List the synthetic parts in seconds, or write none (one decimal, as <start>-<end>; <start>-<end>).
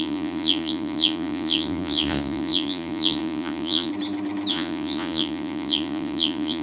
0.0-3.9; 4.5-6.6